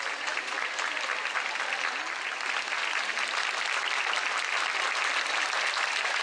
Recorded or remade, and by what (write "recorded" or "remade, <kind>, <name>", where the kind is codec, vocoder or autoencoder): recorded